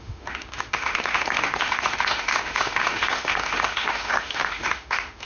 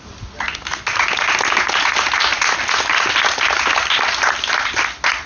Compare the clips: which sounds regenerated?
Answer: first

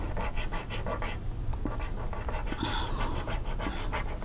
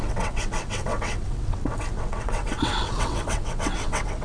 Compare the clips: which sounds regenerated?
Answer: second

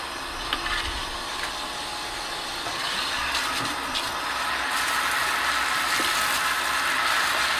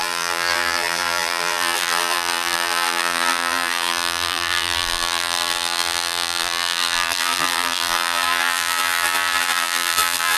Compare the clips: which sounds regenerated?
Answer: second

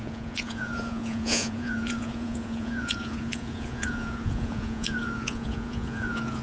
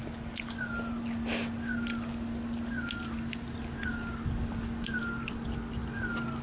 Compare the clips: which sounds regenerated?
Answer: first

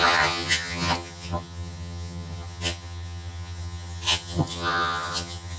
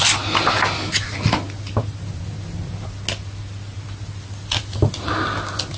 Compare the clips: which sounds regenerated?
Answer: first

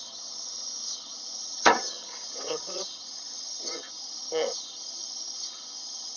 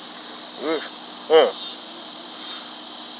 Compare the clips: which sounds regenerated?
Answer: first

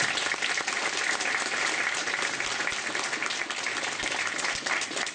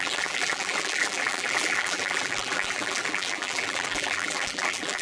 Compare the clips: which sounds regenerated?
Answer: second